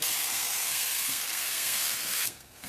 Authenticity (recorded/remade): remade